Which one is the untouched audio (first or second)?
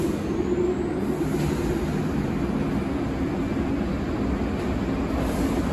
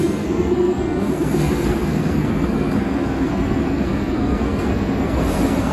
first